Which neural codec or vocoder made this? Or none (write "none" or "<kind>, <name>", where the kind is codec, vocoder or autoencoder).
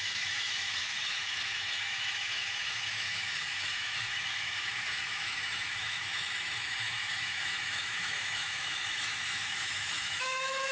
autoencoder, DAC-VAE